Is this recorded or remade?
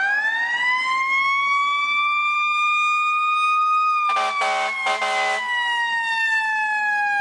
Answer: recorded